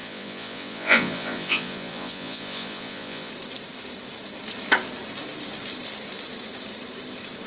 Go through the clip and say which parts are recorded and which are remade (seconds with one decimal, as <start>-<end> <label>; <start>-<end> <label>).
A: 0.0-3.3 remade; 3.3-7.5 recorded